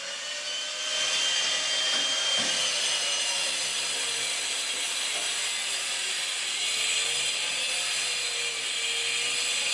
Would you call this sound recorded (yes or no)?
yes